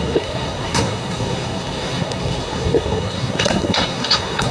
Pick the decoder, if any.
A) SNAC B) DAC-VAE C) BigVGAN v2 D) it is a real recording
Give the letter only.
A